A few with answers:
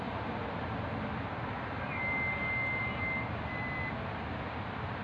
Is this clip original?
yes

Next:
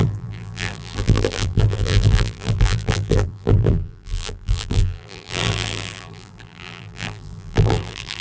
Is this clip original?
no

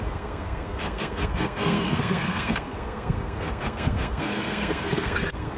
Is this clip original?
no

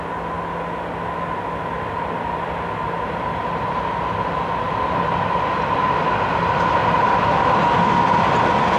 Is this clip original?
yes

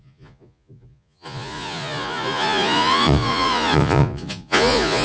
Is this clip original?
no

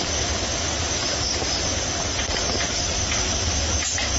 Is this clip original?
yes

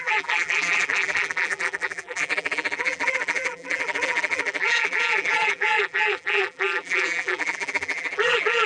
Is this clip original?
no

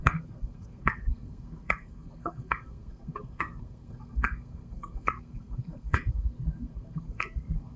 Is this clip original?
no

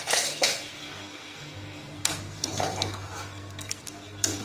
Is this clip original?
no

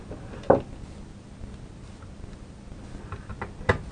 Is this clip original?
yes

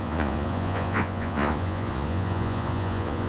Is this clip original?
no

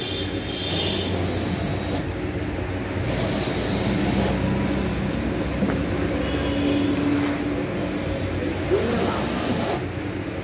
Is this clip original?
yes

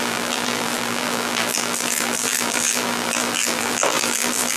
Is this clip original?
no